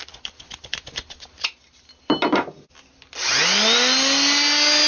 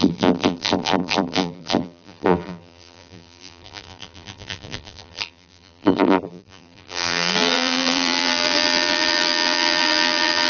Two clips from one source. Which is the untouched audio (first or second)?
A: first